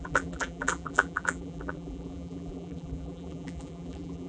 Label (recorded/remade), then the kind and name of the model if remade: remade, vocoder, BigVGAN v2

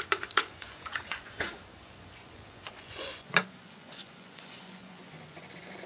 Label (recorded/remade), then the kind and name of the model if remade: remade, vocoder, Vocos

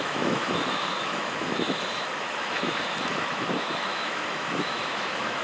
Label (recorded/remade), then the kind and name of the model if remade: remade, autoencoder, DAC-VAE